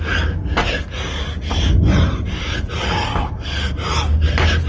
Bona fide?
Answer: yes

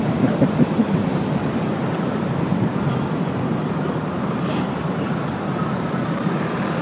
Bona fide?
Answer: no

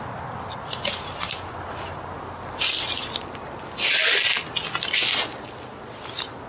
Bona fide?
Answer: yes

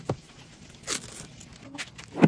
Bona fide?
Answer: yes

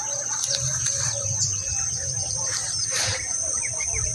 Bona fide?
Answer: no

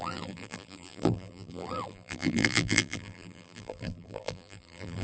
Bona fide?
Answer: no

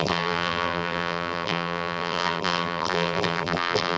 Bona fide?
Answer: no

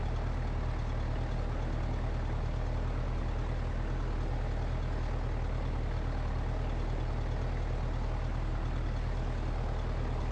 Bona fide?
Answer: yes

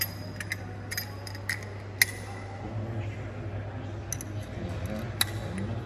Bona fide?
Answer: yes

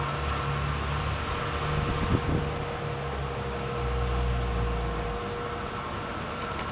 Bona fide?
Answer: yes